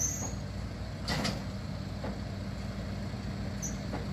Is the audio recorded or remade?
recorded